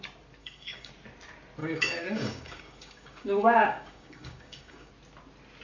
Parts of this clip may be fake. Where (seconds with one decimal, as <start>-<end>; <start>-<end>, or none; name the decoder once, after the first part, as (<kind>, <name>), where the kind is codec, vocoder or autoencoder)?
0.4-0.9 (codec, DAC); 1.6-4.9